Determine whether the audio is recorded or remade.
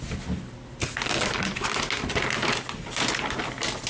recorded